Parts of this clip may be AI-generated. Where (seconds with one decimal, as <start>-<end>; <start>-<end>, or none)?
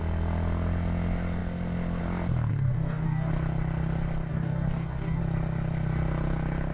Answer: 2.5-3.3; 4.3-5.2